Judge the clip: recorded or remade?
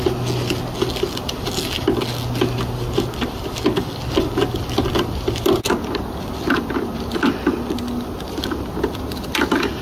recorded